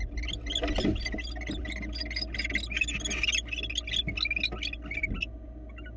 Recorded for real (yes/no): yes